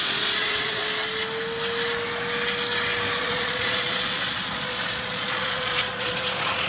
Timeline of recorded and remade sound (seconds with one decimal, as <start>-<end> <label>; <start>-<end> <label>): 0.0-0.8 remade; 0.8-3.2 recorded; 3.2-6.7 remade